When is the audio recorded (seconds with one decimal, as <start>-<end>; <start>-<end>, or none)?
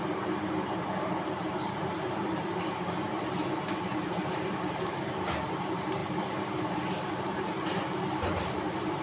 none